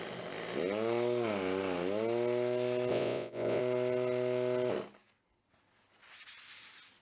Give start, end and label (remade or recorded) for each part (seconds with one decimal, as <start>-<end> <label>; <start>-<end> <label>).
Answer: 0.0-2.9 recorded; 2.9-3.6 remade; 3.6-7.0 recorded